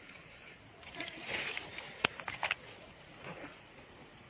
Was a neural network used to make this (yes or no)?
yes